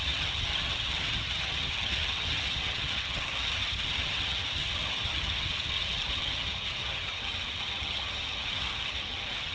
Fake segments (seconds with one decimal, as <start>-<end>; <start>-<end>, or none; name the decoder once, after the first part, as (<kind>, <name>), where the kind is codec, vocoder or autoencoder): 0.0-9.5 (vocoder, HiFi-GAN)